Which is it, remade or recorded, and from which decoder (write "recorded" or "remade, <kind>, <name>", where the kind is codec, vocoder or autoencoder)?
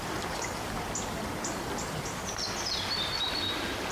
recorded